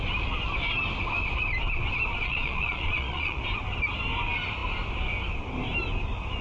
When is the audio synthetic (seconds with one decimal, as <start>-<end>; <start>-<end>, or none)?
2.1-3.4